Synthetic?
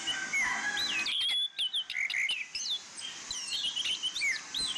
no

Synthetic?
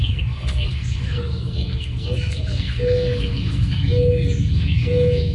yes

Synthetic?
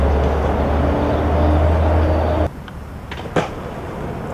no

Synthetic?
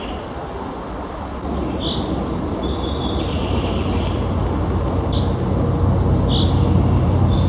no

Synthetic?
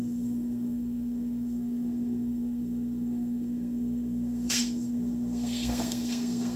yes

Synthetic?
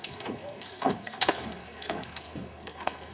yes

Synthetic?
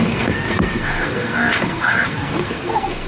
yes